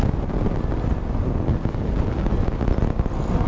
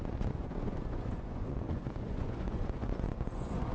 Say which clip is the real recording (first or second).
first